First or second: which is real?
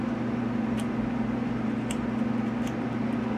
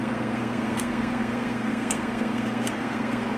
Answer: first